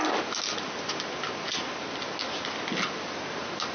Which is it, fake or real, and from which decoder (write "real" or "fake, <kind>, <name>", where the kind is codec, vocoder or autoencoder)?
real